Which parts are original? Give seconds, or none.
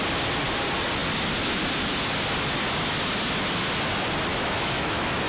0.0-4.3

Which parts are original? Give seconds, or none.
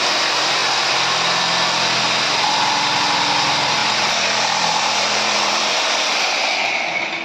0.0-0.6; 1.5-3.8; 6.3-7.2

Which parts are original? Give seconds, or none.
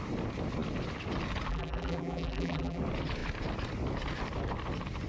0.0-1.5; 2.8-5.1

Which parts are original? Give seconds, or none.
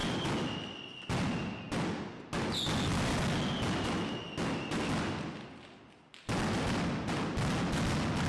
0.0-8.3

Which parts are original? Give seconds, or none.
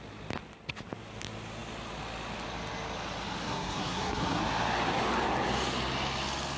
0.0-3.4; 4.4-6.6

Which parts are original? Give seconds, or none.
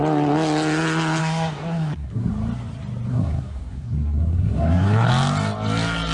0.0-1.2; 2.3-3.1; 5.1-6.1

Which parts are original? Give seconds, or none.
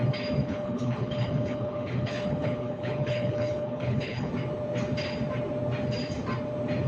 0.0-0.4; 4.3-6.9